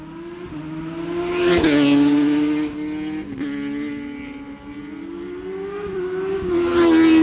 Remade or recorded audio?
recorded